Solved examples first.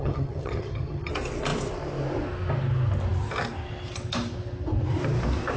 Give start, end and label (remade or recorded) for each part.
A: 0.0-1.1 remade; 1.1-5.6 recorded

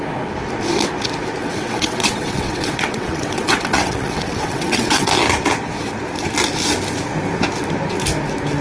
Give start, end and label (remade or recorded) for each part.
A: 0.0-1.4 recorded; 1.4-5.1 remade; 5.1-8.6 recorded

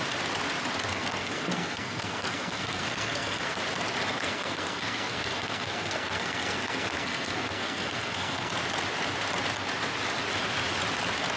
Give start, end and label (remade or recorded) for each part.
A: 0.0-0.9 recorded; 0.9-3.6 remade; 3.6-4.1 recorded; 4.1-8.5 remade; 8.5-11.4 recorded

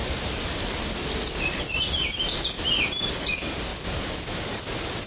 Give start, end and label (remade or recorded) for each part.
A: 0.0-5.1 recorded

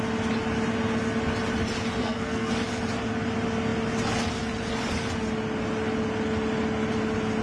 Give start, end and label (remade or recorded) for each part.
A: 0.0-2.0 recorded; 2.0-2.5 remade; 2.5-7.4 recorded

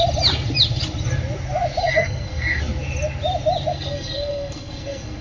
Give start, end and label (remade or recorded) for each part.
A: 0.0-1.8 recorded; 1.8-2.6 remade; 2.6-3.7 recorded; 3.7-5.2 remade